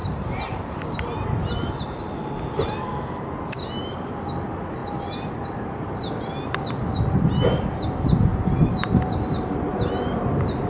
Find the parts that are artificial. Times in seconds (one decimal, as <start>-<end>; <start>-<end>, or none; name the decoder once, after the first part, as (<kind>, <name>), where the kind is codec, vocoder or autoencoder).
0.0-0.8 (vocoder, BigVGAN v2); 4.8-6.0; 8.3-9.9